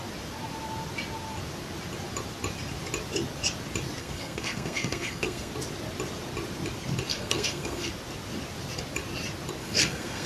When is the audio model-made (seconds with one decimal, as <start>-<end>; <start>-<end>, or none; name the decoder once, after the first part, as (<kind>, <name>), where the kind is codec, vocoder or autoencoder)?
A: 4.0-5.5 (codec, SNAC); 7.1-7.9; 9.6-10.3